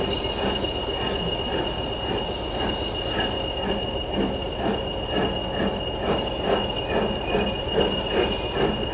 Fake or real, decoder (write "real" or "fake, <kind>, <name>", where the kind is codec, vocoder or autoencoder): real